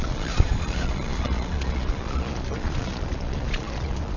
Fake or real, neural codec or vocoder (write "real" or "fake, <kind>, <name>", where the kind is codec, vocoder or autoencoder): fake, vocoder, Vocos